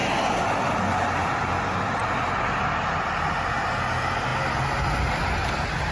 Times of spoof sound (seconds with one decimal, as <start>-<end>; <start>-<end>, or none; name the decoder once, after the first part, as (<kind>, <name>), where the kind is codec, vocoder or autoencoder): none